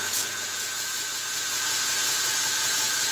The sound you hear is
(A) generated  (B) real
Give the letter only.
A